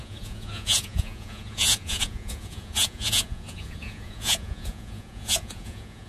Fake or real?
fake